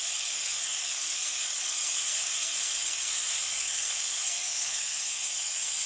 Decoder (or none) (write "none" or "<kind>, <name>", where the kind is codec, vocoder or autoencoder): codec, SNAC